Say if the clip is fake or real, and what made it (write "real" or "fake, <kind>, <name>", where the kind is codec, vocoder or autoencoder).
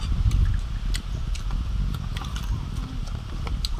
real